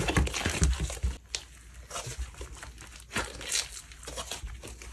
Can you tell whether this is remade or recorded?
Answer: recorded